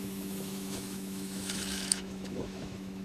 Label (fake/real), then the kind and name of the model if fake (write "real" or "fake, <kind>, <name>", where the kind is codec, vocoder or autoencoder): fake, autoencoder, DAC-VAE